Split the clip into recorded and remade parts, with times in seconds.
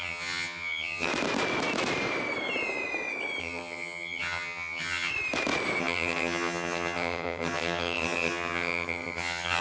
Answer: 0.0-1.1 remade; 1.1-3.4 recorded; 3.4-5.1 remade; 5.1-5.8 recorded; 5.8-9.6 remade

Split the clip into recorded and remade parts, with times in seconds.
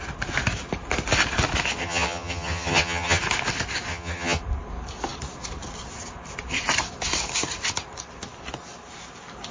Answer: 0.0-1.8 recorded; 1.8-3.2 remade; 3.2-3.9 recorded; 3.9-4.4 remade; 4.4-9.5 recorded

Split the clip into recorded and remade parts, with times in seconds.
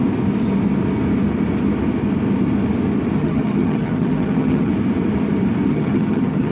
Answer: 0.0-3.2 recorded; 3.2-4.7 remade; 4.7-5.7 recorded; 5.7-6.5 remade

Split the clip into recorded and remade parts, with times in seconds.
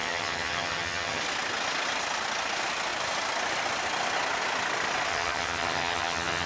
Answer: 0.0-1.2 remade; 1.2-5.1 recorded; 5.1-6.5 remade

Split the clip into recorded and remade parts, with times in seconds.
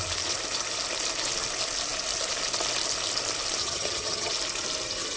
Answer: 0.0-3.6 recorded; 3.6-4.3 remade; 4.3-5.2 recorded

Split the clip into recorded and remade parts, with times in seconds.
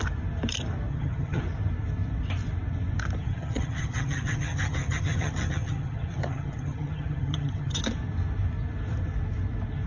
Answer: 0.0-0.9 recorded; 0.9-1.4 remade; 1.4-3.2 recorded; 3.2-7.8 remade; 7.8-9.9 recorded